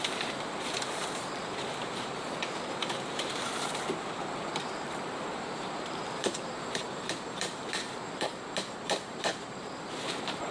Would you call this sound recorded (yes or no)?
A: no